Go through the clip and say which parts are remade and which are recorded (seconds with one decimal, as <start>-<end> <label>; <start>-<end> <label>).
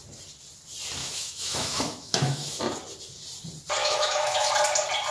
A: 0.0-1.0 recorded; 1.0-2.6 remade; 2.6-3.8 recorded; 3.8-4.5 remade; 4.5-5.1 recorded